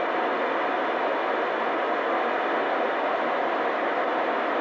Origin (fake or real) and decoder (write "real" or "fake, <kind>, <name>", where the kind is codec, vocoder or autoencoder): real